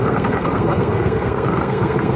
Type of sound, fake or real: fake